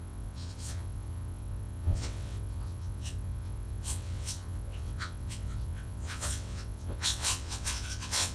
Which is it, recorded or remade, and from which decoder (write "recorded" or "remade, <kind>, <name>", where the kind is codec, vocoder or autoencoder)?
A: remade, vocoder, WaveNeXt